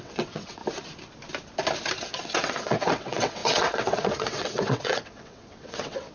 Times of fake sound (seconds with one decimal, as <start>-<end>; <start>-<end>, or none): 0.0-0.6; 2.0-6.1